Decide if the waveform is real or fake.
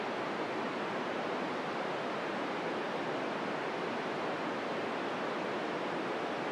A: real